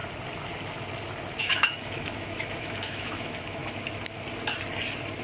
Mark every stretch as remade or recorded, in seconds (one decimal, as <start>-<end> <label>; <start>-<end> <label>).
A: 0.0-1.4 recorded; 1.4-3.6 remade; 3.6-5.2 recorded